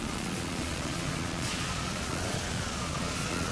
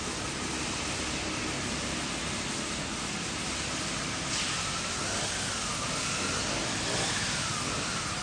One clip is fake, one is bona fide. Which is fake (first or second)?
first